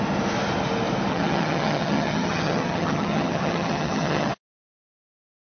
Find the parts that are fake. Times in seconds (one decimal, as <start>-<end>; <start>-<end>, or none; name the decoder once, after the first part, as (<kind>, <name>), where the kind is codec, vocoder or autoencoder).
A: 1.1-4.3 (vocoder, HiFi-GAN)